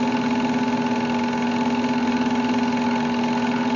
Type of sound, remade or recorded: recorded